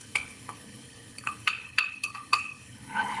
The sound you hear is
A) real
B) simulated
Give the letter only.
B